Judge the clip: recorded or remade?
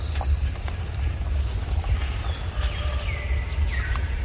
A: recorded